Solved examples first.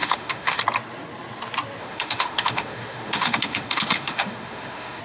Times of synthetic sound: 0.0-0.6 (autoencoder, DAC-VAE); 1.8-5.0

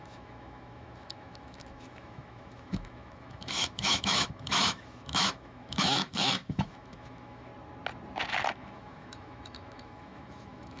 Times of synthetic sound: 0.0-7.5 (autoencoder, DAC-VAE); 8.5-10.8